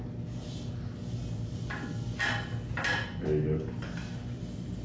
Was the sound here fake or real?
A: real